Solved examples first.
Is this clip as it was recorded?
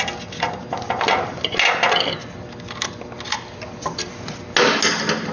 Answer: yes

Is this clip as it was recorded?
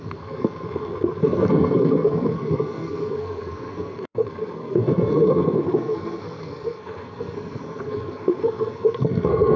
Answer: no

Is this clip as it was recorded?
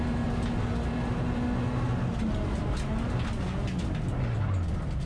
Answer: yes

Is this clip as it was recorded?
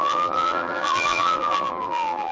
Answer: no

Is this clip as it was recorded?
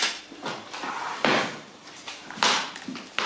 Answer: yes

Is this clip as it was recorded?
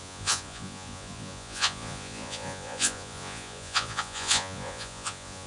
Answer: no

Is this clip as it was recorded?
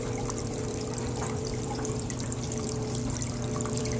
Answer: no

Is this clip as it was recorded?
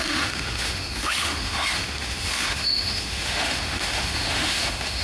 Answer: no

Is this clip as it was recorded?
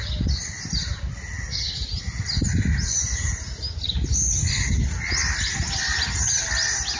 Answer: yes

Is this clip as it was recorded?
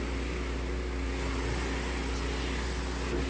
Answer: yes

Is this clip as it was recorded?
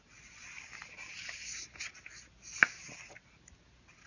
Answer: yes